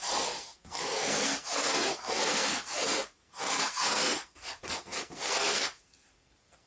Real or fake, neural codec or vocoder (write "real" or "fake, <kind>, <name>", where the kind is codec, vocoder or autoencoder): fake, codec, SNAC